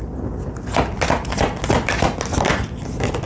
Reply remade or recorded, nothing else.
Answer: recorded